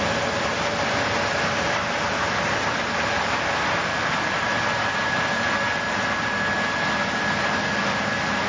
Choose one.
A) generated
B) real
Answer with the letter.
B